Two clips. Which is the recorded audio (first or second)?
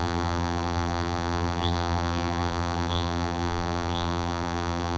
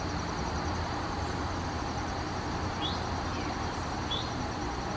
second